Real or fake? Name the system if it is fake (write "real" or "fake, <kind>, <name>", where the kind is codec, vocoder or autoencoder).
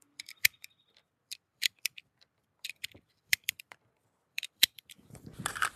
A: fake, vocoder, BigVGAN v2